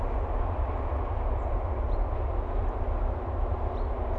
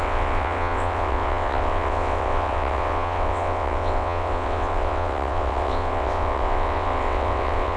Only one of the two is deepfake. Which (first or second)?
second